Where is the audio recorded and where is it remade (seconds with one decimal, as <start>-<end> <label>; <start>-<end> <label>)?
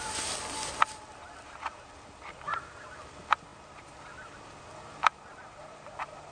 0.0-6.3 recorded